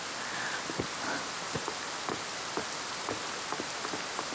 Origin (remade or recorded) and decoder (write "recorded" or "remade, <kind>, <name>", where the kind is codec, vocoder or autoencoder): recorded